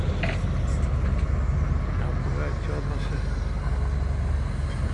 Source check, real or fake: real